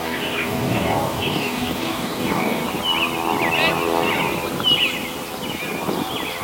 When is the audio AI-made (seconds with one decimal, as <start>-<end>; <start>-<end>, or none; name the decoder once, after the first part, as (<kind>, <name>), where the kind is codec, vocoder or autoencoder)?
0.0-2.6 (codec, DAC)